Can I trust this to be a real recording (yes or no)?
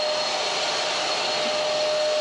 yes